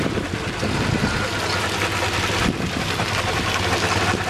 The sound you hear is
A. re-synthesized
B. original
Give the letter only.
B